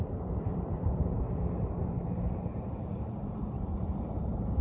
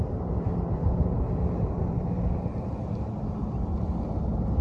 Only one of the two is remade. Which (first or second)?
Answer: first